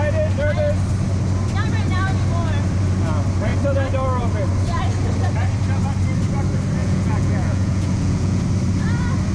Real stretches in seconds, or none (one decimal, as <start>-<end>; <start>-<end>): 0.0-6.8; 8.4-9.3